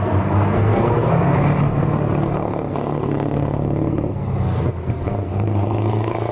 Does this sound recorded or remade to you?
remade